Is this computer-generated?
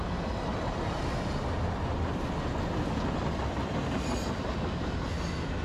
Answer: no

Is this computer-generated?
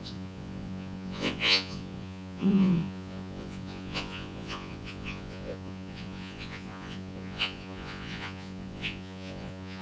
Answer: yes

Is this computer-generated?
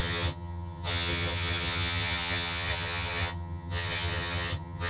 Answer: yes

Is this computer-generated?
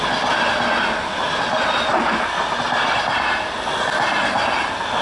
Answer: no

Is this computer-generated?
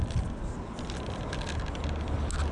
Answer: no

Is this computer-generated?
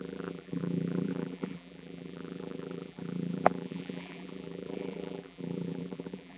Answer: yes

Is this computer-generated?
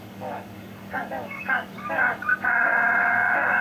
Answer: yes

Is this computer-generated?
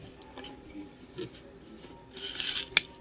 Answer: no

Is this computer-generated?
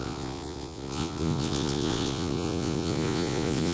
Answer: yes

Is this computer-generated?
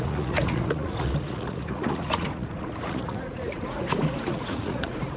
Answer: yes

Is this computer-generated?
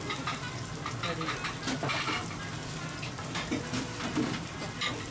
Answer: no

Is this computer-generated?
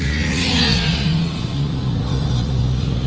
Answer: yes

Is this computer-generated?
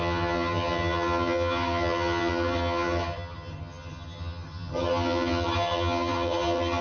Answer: yes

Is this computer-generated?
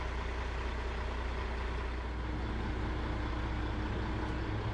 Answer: no